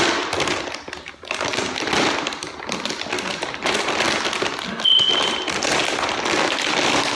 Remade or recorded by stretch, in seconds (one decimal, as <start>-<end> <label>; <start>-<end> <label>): 0.0-7.1 recorded